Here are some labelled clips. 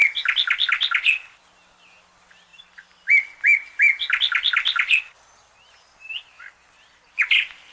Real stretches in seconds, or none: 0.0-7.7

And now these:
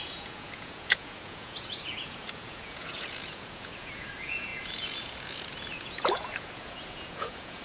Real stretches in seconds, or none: none

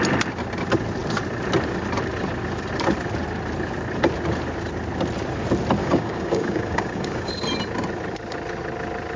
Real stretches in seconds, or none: 0.0-5.8; 7.3-9.2

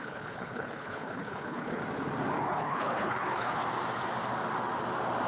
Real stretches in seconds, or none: 1.8-2.5; 3.6-5.3

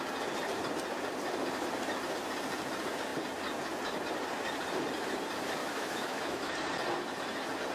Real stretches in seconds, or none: 0.0-5.6; 6.5-7.7

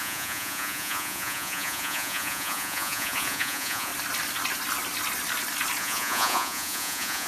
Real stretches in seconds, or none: 3.9-5.8